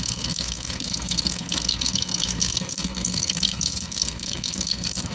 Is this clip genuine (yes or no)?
no